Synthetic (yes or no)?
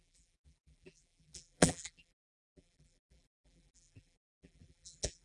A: yes